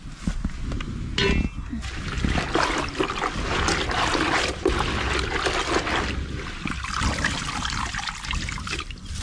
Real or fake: real